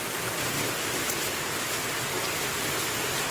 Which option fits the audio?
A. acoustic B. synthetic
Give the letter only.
A